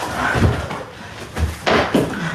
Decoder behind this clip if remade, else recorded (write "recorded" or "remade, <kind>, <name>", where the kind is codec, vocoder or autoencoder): recorded